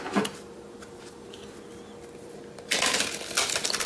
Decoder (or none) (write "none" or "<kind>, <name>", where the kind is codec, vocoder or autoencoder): none